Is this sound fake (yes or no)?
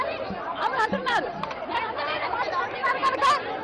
yes